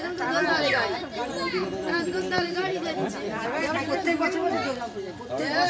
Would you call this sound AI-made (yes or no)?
no